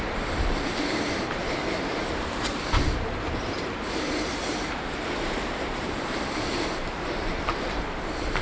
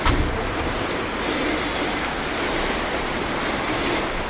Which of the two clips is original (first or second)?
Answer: second